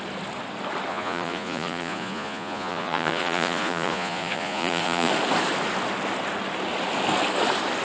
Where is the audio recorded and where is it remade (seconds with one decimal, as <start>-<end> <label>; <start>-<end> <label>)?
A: 0.0-0.9 recorded; 0.9-5.1 remade; 5.1-7.8 recorded